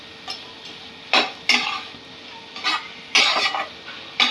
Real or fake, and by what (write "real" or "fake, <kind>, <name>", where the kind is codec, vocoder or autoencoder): real